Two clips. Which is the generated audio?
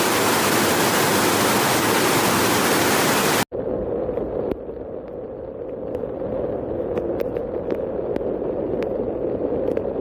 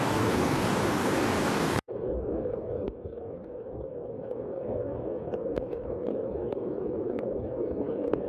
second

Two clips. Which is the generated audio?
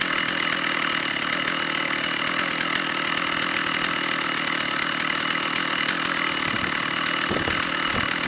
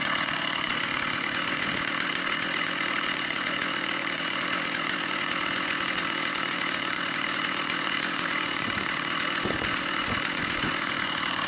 second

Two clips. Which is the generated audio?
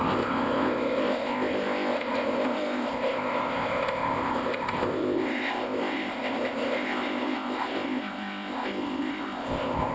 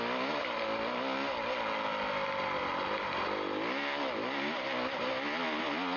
first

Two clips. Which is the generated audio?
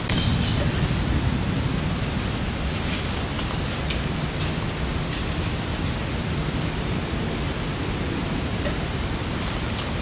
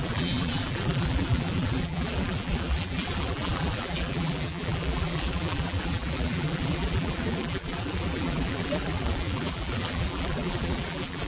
second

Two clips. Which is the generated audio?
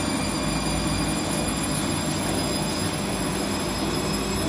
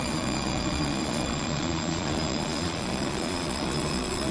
second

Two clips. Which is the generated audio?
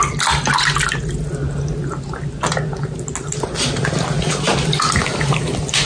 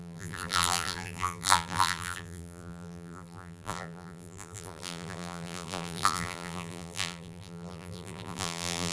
second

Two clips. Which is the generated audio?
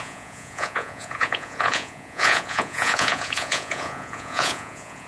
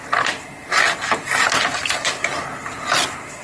first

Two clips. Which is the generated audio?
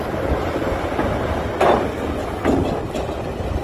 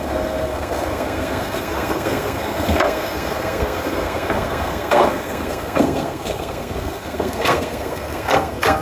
second